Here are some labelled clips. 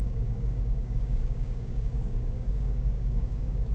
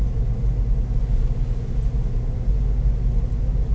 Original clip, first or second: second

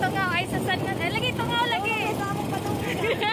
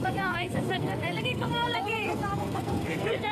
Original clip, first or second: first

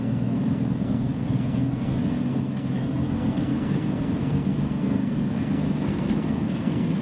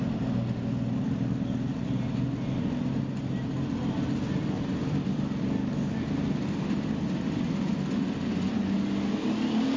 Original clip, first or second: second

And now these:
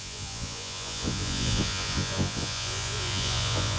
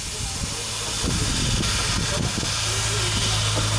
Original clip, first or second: second